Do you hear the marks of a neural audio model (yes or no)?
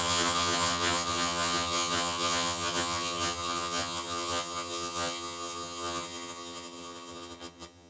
yes